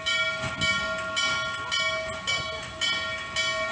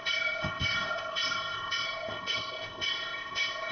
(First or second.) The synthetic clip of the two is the second